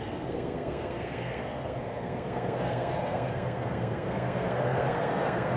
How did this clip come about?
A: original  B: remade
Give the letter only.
B